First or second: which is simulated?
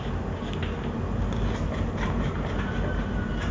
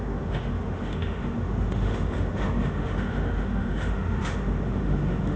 second